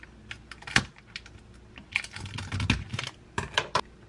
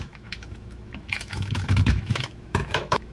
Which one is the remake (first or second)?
second